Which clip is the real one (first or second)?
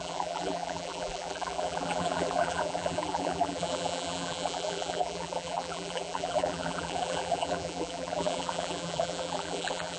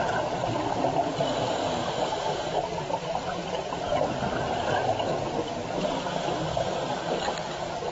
second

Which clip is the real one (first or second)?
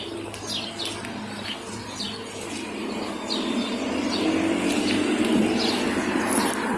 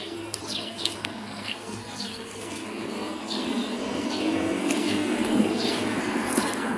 first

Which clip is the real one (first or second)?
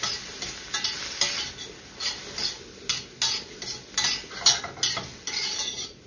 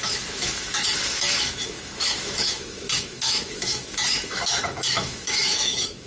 first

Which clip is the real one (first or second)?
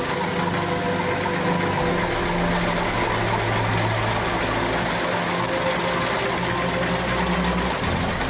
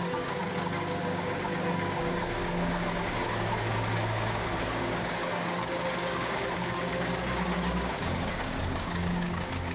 first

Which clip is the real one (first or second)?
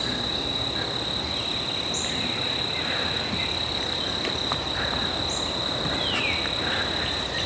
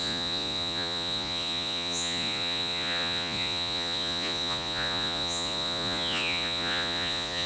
first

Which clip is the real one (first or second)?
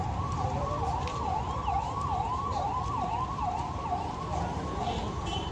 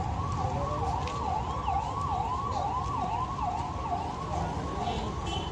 second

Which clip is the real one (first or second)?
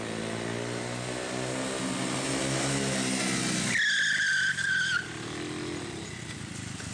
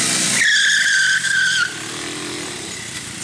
first